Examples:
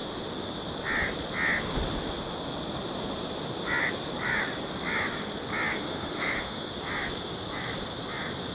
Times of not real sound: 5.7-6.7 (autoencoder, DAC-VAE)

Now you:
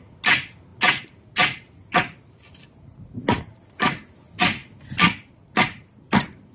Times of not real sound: none